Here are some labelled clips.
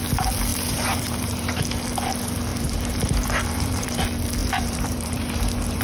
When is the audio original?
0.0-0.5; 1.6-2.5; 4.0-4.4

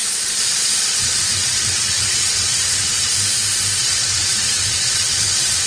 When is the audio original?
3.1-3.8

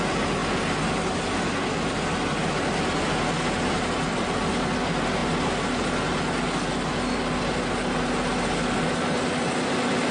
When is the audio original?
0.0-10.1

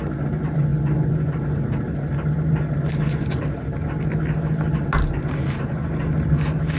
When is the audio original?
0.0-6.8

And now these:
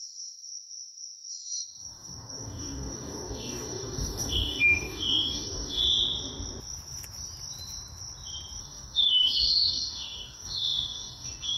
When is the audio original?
0.5-1.3; 5.8-8.6

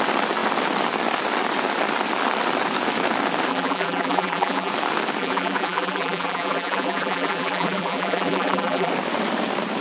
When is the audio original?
0.0-3.5; 4.7-5.2; 8.9-9.8

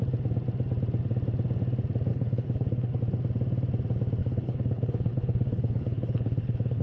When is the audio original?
0.0-2.1; 3.0-4.2

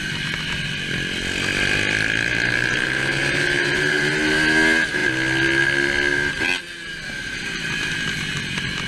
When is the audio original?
0.0-2.3; 4.1-8.9